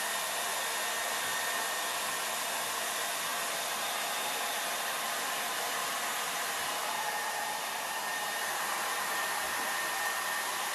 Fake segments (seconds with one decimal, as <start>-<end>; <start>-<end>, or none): 3.3-3.9; 6.1-9.8

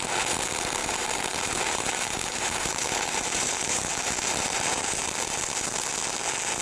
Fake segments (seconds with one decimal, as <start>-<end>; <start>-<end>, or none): 0.8-4.8

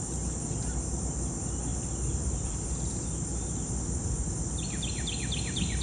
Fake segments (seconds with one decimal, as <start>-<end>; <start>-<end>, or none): none

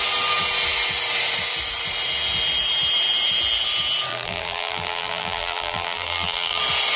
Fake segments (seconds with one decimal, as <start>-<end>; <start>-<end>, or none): 4.1-6.6

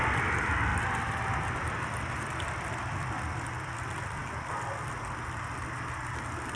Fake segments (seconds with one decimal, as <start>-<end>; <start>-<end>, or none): none

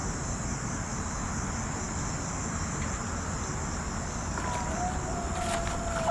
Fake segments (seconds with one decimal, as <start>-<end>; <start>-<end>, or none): none